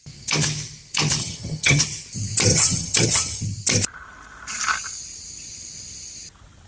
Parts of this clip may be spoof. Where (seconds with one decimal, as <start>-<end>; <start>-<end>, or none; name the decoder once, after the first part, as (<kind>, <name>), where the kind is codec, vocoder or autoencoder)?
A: 1.2-1.8 (vocoder, HiFi-GAN); 2.5-3.4